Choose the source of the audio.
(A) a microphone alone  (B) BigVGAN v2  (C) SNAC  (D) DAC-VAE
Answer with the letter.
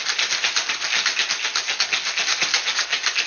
A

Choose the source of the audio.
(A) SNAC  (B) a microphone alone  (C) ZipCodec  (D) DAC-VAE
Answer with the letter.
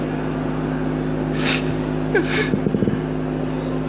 B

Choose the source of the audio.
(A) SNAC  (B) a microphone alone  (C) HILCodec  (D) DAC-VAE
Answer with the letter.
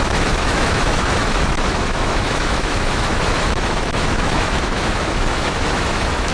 D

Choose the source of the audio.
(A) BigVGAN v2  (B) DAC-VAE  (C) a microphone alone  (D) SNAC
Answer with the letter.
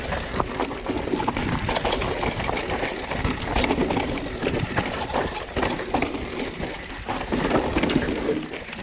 C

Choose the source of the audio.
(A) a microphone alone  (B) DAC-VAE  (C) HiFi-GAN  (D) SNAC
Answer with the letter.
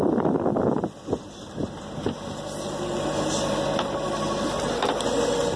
A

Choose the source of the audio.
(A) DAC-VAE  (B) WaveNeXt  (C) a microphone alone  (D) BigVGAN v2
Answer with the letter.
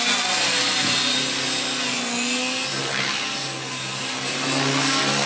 C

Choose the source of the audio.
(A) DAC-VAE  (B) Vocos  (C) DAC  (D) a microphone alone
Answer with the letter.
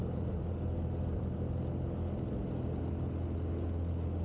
D